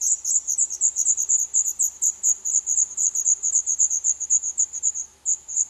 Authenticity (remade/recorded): recorded